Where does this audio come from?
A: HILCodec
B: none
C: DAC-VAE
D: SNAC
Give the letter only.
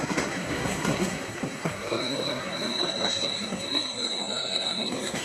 D